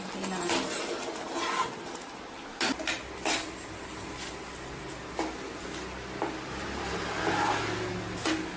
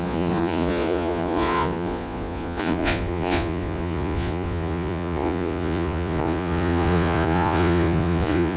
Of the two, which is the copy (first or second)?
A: second